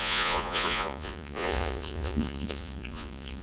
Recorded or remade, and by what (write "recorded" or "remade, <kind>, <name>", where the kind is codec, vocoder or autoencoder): remade, vocoder, Vocos